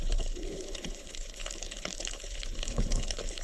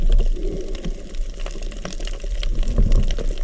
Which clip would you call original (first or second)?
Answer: second